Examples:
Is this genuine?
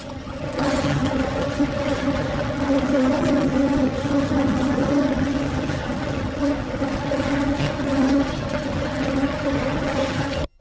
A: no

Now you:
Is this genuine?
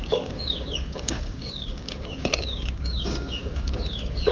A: no